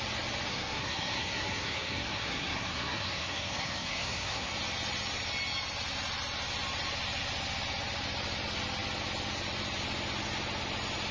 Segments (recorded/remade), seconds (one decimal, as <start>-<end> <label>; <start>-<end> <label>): 0.0-0.5 recorded; 0.5-4.5 remade; 4.5-11.1 recorded

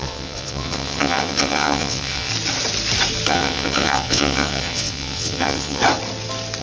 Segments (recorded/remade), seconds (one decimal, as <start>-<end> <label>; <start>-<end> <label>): 0.0-2.3 remade; 2.3-3.3 recorded; 3.3-5.8 remade; 5.8-6.6 recorded

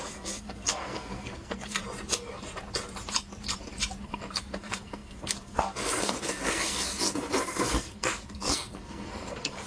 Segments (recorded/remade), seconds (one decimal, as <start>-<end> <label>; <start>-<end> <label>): 0.0-1.8 remade; 1.8-4.0 recorded; 4.0-9.7 remade

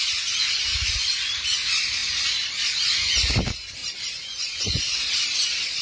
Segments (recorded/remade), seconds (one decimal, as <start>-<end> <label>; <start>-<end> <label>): 0.0-3.8 recorded; 3.8-4.8 remade; 4.8-5.8 recorded

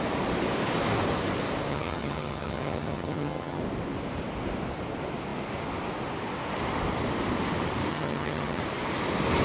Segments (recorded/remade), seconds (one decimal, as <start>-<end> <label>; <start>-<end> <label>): 0.0-1.7 recorded; 1.7-3.6 remade; 3.6-7.9 recorded; 7.9-8.6 remade; 8.6-9.4 recorded

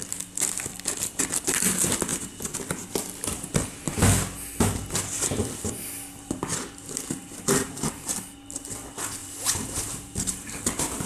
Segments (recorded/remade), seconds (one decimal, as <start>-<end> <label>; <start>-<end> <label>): 0.0-7.2 recorded; 7.2-8.1 remade; 8.1-9.2 recorded; 9.2-10.5 remade; 10.5-11.1 recorded

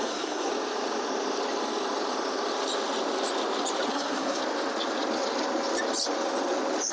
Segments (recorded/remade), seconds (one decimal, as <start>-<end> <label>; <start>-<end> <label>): 0.0-0.5 remade; 0.5-3.9 recorded; 3.9-4.4 remade; 4.4-6.9 recorded